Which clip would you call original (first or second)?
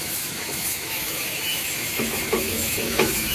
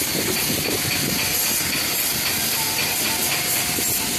second